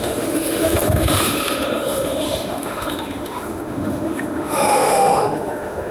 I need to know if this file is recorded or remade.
remade